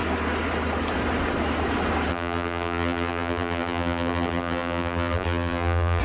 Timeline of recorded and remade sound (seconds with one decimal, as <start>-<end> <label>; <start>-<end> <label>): 0.0-2.1 recorded; 2.1-6.0 remade

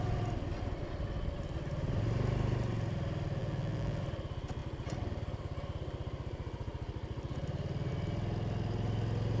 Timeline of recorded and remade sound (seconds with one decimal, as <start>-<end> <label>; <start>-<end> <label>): 0.0-3.4 recorded; 3.4-4.0 remade; 4.0-9.4 recorded

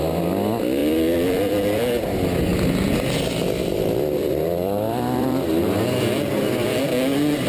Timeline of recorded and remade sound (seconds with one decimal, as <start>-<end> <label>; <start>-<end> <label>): 0.0-0.8 recorded; 0.8-1.8 remade; 1.8-3.6 recorded; 3.6-6.8 remade; 6.8-7.5 recorded

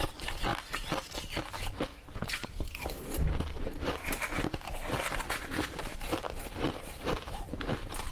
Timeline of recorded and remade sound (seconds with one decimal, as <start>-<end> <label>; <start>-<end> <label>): 0.0-0.5 remade; 0.5-1.5 recorded; 1.5-8.1 remade

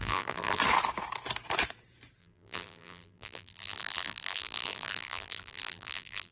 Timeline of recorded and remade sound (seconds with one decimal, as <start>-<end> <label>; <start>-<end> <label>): 0.0-0.6 remade; 0.6-2.2 recorded; 2.2-6.3 remade

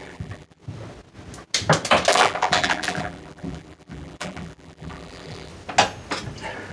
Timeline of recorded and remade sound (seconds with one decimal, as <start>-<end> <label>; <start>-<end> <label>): 0.0-0.6 remade; 0.6-2.1 recorded; 2.1-5.5 remade; 5.5-6.7 recorded

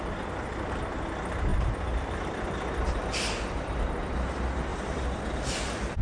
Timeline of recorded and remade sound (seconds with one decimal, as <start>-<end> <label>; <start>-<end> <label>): 0.0-1.5 recorded; 1.5-3.7 remade; 3.7-4.7 recorded; 4.7-5.3 remade; 5.3-6.0 recorded